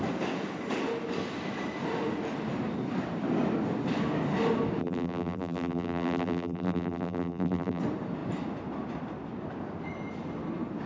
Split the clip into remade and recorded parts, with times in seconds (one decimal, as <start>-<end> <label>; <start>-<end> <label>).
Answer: 0.0-4.8 recorded; 4.8-7.8 remade; 7.8-10.9 recorded